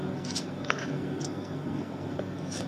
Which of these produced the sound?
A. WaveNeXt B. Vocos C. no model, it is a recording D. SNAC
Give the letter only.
D